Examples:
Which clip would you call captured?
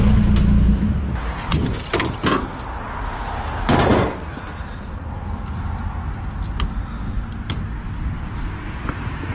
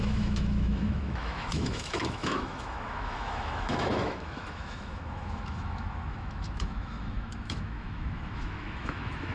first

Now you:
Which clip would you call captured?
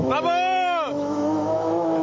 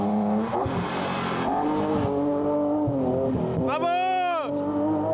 second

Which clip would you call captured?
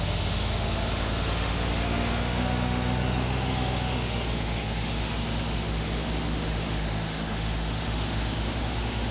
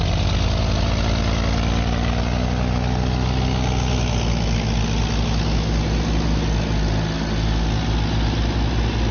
second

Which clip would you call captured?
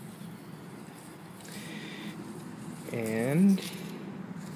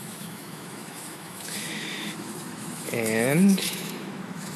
first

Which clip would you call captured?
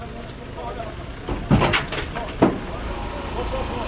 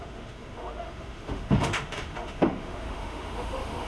first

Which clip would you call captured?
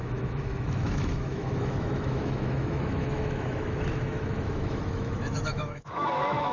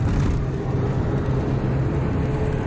second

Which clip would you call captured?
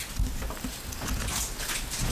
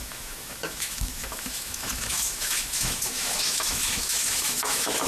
first